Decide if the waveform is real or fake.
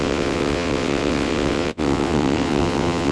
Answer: fake